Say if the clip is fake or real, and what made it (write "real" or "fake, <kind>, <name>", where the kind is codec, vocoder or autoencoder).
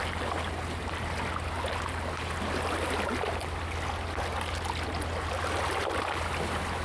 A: real